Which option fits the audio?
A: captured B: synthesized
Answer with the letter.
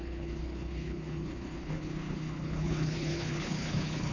B